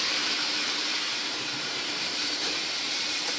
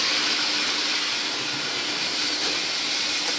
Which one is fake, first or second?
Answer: first